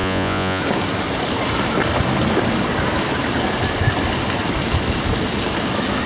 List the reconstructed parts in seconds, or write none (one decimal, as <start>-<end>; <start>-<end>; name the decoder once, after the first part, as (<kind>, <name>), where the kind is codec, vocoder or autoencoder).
0.0-0.6 (vocoder, Vocos)